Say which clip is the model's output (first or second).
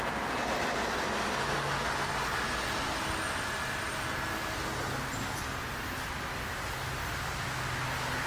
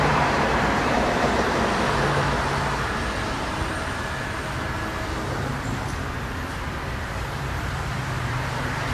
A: second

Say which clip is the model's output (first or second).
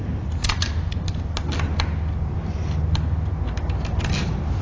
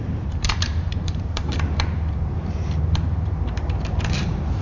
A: second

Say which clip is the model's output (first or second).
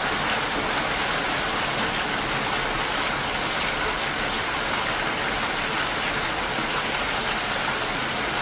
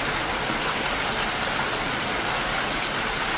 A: second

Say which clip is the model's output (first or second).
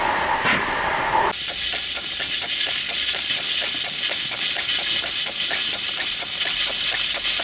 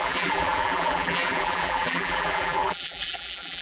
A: second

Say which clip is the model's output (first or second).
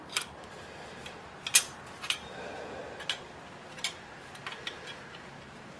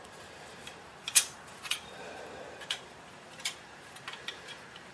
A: second